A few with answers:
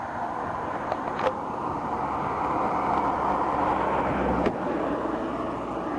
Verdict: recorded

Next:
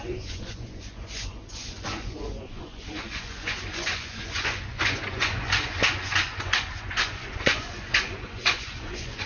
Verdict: remade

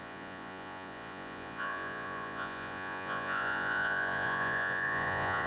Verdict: remade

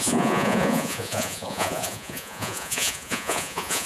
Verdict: remade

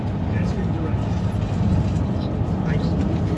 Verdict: recorded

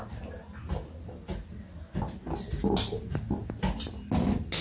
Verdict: recorded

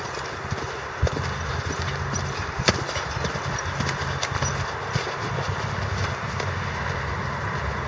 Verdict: recorded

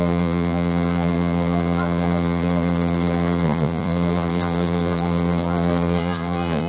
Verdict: remade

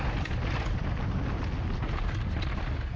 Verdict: recorded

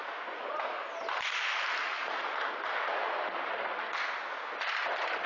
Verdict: recorded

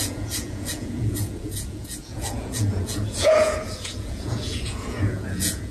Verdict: remade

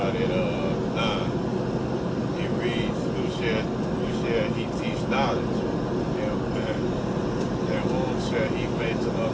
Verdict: recorded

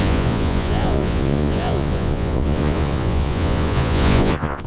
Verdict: remade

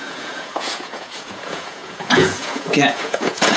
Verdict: remade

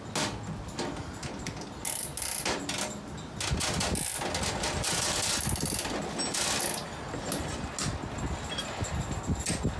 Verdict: recorded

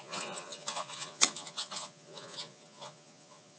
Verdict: remade